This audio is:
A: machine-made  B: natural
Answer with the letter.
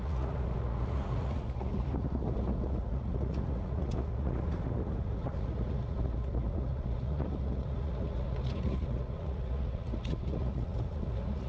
A